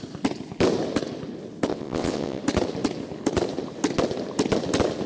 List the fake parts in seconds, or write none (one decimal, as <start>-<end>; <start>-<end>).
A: 1.7-2.4

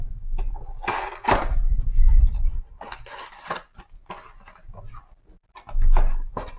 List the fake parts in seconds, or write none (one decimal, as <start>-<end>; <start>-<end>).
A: 0.0-2.5; 3.3-4.0; 6.1-6.6

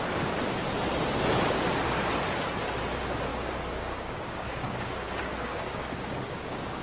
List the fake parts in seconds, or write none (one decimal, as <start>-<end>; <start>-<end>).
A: 3.3-6.8

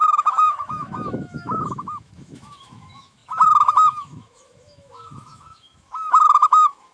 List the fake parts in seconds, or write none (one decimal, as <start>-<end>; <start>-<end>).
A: 0.0-6.9

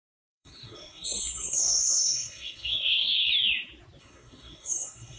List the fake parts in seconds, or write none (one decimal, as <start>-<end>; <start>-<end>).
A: 0.0-3.3; 4.0-5.2

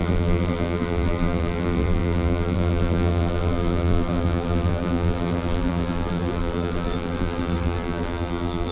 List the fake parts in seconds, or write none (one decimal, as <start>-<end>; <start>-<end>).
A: 0.0-8.7